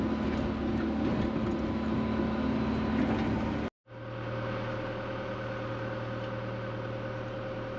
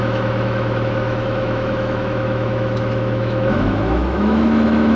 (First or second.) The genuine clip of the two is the first